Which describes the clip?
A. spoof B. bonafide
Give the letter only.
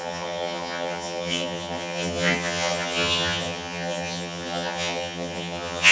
A